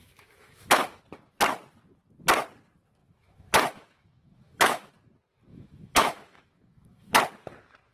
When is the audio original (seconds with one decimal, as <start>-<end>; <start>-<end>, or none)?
1.0-3.0; 4.9-5.5; 7.2-7.9